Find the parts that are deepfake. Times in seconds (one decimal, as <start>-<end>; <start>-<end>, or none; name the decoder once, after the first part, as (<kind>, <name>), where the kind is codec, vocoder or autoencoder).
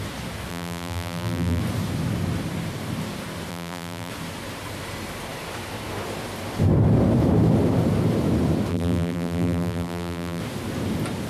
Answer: 0.5-1.6 (vocoder, BigVGAN v2); 3.5-4.1; 8.7-10.4